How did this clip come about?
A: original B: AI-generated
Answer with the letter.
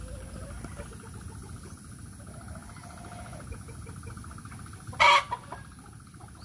A